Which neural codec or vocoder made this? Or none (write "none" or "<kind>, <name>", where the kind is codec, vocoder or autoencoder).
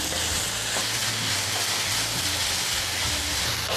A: none